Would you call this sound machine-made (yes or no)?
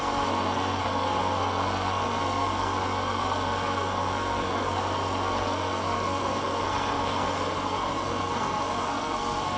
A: yes